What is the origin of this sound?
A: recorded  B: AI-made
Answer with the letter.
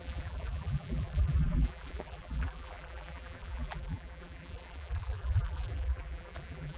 B